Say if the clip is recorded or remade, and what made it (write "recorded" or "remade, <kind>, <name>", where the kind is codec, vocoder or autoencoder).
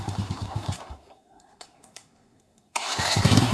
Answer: remade, codec, SNAC